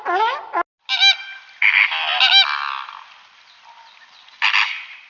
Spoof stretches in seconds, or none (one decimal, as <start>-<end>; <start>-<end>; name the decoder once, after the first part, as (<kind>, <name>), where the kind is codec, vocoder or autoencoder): none